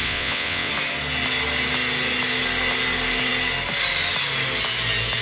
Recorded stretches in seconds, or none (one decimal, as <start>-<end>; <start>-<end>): 0.7-5.2